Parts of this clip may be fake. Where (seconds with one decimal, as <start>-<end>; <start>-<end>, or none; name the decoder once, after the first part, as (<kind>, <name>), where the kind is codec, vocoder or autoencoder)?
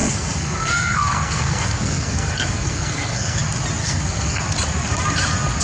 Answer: 0.0-3.4 (codec, SNAC); 3.8-4.4